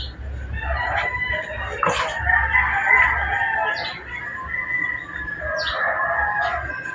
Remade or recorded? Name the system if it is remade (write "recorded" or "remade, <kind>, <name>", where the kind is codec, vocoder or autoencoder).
recorded